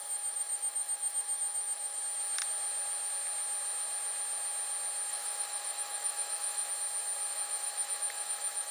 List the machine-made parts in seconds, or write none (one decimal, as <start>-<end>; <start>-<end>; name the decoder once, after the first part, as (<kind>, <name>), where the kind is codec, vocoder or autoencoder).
0.0-2.0 (autoencoder, DAC-VAE); 5.1-6.7; 7.3-8.7